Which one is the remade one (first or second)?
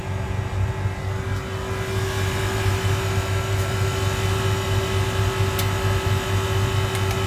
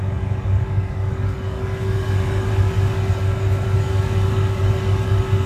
second